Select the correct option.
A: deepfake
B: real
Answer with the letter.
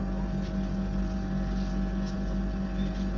B